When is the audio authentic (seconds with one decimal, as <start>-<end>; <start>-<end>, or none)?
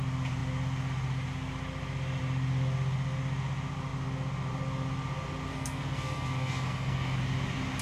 0.0-5.5; 7.2-7.8